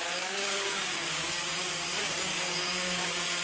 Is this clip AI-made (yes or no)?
yes